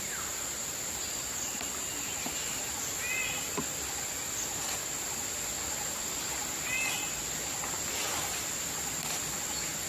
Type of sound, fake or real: real